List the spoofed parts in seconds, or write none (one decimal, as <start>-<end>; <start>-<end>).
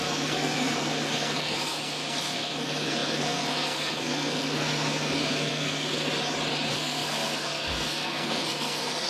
0.0-6.1; 6.7-9.1